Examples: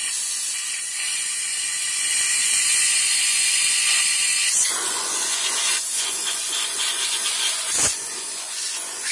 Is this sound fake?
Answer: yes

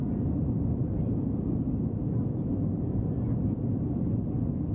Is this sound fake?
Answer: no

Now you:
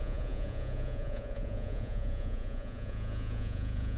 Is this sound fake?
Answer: yes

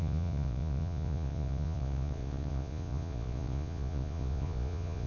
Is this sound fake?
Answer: yes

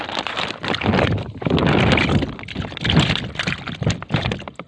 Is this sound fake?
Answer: no